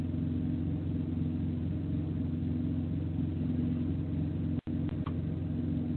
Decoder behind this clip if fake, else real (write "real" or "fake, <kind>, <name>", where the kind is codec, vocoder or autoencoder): real